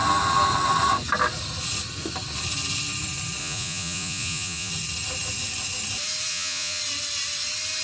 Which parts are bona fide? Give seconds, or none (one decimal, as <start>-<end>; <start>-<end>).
0.0-3.4; 4.7-6.3; 6.8-7.8